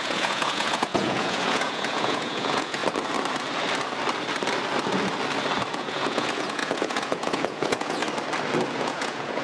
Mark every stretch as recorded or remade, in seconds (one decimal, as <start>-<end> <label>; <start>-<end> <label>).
0.0-2.8 remade; 2.8-5.7 recorded; 5.7-8.0 remade; 8.0-8.7 recorded; 8.7-9.4 remade